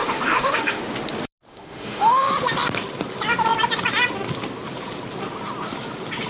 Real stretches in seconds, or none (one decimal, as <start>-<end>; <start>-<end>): 0.8-1.5; 2.3-6.3